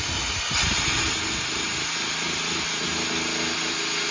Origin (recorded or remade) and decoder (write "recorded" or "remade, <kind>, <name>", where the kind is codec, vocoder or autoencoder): recorded